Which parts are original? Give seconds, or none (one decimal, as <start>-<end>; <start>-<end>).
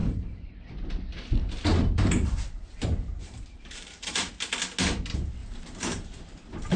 0.6-1.7; 4.3-5.4